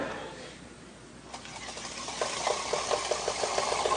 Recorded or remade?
recorded